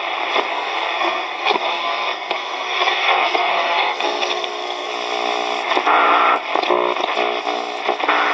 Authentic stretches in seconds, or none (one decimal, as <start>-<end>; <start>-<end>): 0.0-0.5; 4.9-8.3